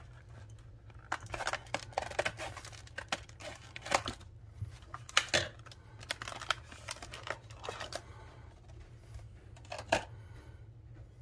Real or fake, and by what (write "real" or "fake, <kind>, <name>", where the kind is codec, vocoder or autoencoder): real